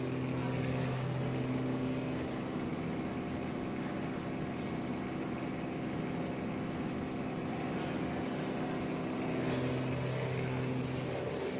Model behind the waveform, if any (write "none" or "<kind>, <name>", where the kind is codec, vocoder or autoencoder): none